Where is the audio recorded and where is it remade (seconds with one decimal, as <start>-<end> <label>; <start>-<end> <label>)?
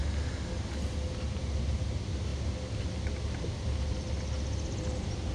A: 0.0-5.3 recorded